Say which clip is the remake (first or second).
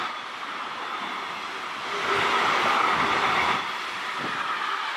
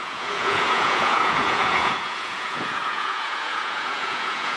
second